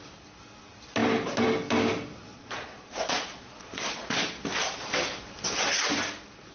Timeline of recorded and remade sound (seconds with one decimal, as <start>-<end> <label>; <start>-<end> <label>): 0.0-2.3 recorded; 2.3-4.4 remade; 4.4-6.5 recorded